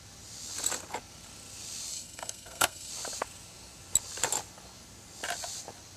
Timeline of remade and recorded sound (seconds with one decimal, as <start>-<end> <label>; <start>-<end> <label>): 0.0-1.9 recorded; 1.9-2.9 remade; 2.9-6.0 recorded